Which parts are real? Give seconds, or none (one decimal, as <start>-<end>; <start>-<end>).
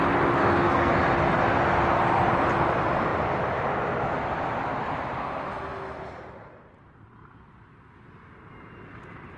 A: 0.0-0.4; 1.0-9.4